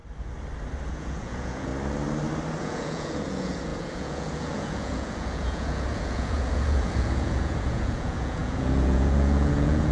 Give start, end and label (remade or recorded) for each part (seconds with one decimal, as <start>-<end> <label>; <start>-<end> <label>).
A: 0.0-0.9 recorded; 0.9-1.7 remade; 1.7-2.6 recorded; 2.6-9.9 remade